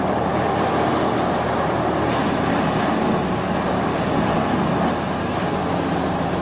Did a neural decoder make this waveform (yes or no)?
no